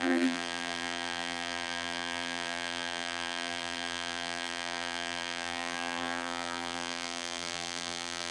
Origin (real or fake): fake